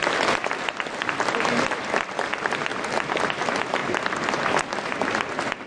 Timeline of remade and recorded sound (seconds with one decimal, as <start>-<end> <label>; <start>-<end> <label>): 0.0-5.7 recorded